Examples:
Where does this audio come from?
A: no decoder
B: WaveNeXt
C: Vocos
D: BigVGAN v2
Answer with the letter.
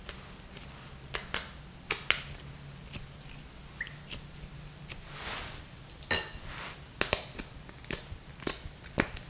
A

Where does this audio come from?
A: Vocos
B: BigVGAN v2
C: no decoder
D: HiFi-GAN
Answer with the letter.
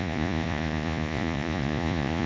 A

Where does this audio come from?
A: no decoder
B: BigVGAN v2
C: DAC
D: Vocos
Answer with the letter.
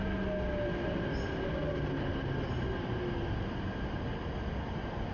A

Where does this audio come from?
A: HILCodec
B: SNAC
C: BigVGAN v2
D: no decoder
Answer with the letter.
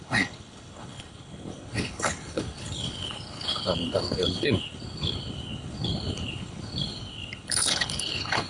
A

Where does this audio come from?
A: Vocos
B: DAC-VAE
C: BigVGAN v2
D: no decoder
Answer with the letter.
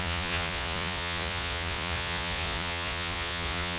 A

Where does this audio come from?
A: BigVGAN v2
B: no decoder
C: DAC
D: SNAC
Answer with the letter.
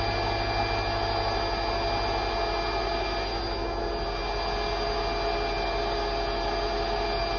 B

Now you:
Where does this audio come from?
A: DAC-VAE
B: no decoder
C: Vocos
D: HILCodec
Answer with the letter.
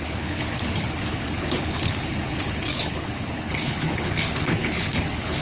D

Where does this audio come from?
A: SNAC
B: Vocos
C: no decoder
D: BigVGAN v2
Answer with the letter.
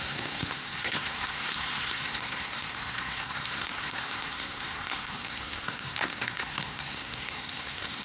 A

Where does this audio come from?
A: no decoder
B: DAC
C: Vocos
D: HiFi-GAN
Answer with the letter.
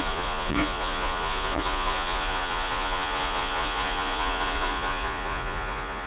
C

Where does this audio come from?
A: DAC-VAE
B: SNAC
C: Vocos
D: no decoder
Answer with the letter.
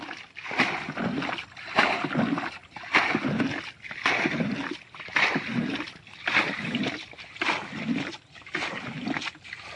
D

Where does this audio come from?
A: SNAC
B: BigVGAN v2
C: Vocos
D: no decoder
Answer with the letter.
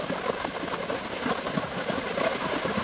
D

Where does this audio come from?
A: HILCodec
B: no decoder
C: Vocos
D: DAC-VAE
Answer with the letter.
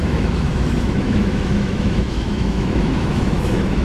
D